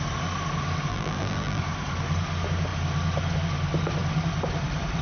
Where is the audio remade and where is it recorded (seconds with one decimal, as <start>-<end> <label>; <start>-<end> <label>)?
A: 0.0-0.9 recorded; 0.9-1.6 remade; 1.6-5.0 recorded